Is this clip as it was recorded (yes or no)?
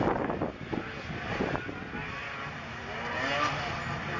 yes